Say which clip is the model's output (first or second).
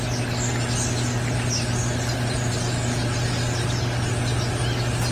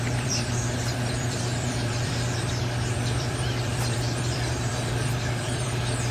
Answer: second